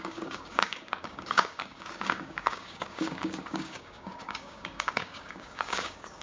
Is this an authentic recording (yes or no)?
no